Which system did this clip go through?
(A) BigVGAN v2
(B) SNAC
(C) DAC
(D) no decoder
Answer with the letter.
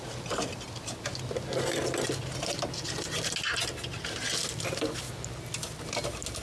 D